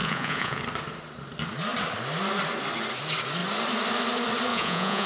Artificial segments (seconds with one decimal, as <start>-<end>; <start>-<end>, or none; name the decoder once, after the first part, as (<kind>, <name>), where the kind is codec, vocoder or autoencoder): 0.0-0.6 (vocoder, Vocos); 4.5-5.1